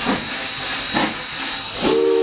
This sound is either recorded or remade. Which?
recorded